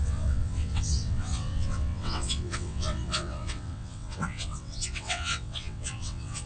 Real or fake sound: fake